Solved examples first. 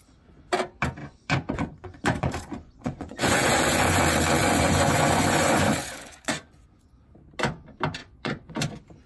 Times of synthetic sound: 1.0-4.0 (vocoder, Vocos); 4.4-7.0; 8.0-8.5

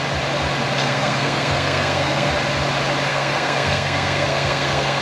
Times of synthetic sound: 0.8-2.3 (codec, SNAC); 3.1-5.0

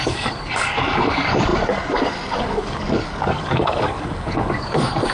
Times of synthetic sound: 0.0-5.1 (codec, DAC)

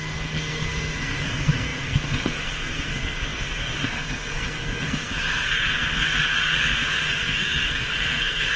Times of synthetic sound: 0.0-8.6 (codec, SNAC)

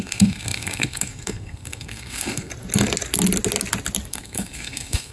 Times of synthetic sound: 0.0-2.5 (codec, SNAC); 4.1-5.1

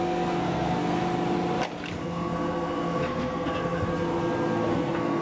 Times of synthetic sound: 0.0-1.0 (codec, SNAC); 2.0-3.9; 4.7-5.2

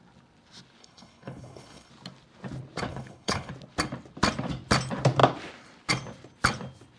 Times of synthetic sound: 0.8-1.9 (codec, HILCodec); 2.9-3.5

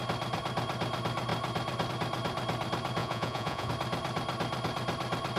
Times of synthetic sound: 3.0-3.7 (vocoder, Vocos)